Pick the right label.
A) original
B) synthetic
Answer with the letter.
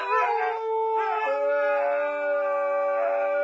A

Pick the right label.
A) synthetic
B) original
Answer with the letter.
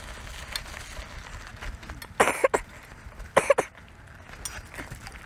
B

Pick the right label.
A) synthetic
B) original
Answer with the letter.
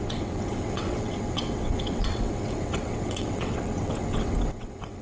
A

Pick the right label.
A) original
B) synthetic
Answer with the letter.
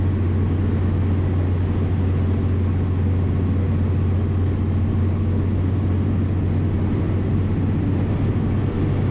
A